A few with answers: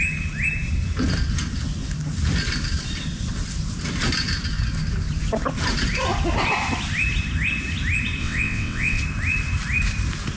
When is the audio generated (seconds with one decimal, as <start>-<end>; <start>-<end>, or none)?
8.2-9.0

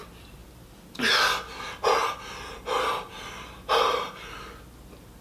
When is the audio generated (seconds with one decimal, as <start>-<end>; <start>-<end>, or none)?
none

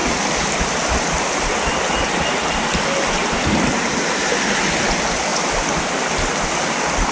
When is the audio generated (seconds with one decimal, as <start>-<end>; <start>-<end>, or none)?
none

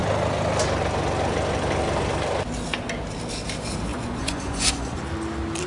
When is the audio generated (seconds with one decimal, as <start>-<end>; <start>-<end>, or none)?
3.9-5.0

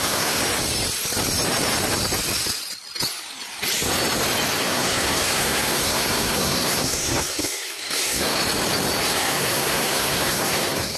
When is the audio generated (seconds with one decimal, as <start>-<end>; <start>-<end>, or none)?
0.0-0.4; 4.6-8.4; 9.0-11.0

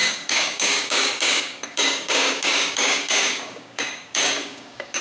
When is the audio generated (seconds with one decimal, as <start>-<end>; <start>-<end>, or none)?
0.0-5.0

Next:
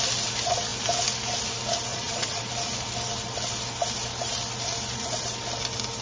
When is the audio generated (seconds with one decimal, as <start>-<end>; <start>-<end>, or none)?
1.9-2.5